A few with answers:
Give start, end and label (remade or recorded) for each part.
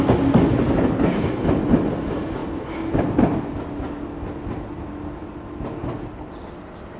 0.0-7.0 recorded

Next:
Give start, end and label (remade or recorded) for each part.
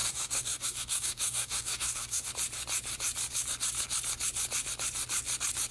0.0-2.3 remade; 2.3-5.7 recorded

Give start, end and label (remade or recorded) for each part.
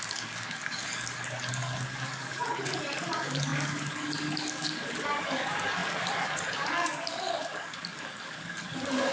0.0-9.1 remade